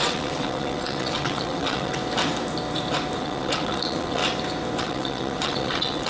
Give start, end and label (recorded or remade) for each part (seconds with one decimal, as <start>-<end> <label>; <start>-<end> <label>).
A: 0.0-2.0 remade; 2.0-3.2 recorded; 3.2-4.2 remade; 4.2-4.8 recorded; 4.8-6.1 remade